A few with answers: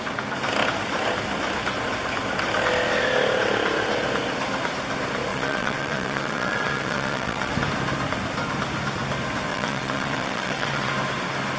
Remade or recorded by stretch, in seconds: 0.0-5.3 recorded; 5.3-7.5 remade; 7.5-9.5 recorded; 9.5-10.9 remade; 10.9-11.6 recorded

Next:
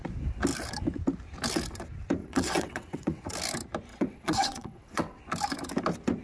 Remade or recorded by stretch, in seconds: 0.0-2.2 recorded; 2.2-3.2 remade; 3.2-3.9 recorded; 3.9-5.2 remade; 5.2-6.2 recorded

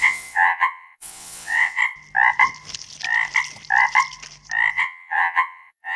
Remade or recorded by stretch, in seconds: 0.0-1.8 remade; 1.8-4.7 recorded; 4.7-6.0 remade

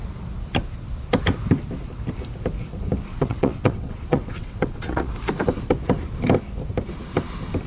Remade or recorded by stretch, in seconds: 0.0-3.1 recorded; 3.1-5.1 remade; 5.1-7.7 recorded

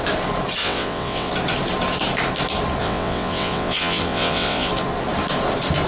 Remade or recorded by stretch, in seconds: 0.0-0.6 recorded; 0.6-1.3 remade; 1.3-2.8 recorded; 2.8-4.7 remade; 4.7-5.9 recorded

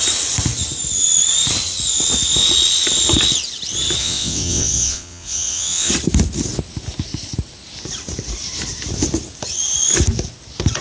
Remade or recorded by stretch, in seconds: 0.0-4.0 recorded; 4.0-5.9 remade; 5.9-10.8 recorded

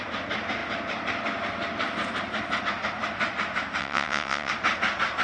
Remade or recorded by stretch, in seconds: 0.0-3.8 recorded; 3.8-4.5 remade; 4.5-5.2 recorded